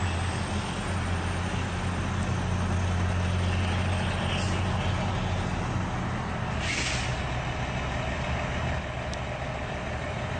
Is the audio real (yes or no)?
yes